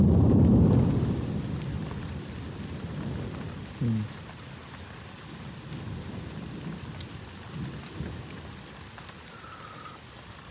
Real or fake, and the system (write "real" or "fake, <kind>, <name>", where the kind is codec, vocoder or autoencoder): real